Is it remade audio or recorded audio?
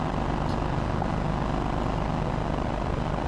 recorded